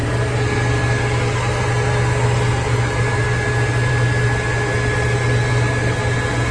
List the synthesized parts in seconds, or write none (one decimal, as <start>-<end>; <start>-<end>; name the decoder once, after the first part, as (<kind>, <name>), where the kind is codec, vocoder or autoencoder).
none